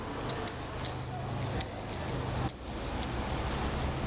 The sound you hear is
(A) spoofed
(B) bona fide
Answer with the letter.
B